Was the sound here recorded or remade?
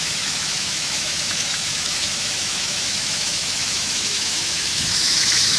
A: remade